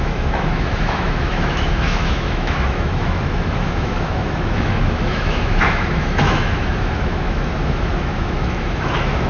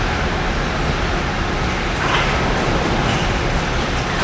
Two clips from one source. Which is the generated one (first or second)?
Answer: first